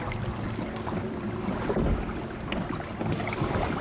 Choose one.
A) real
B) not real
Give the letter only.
A